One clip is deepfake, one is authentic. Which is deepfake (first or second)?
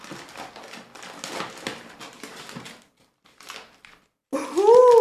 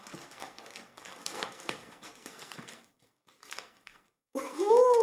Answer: second